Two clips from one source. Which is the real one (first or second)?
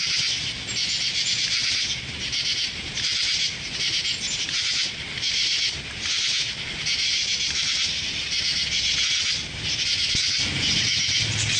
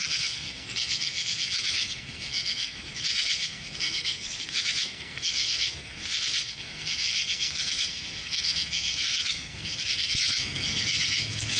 first